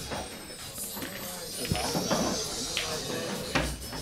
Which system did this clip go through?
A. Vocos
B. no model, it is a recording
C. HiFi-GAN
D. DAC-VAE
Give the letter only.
B